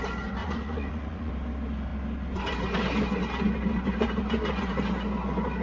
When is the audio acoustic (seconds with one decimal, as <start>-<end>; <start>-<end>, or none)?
0.0-0.4; 1.3-5.6